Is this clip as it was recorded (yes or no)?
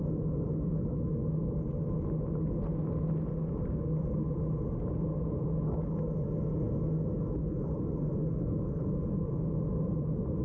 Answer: yes